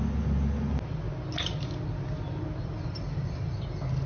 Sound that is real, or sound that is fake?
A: real